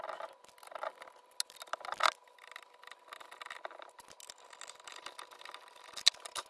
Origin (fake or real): real